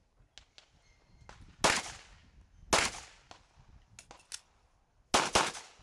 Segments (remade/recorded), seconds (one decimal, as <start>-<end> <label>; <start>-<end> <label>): 0.0-5.8 recorded